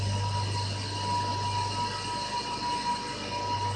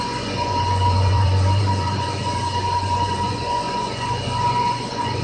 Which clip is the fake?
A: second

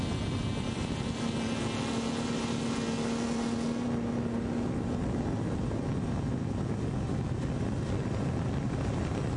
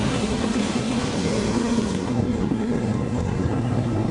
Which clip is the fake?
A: second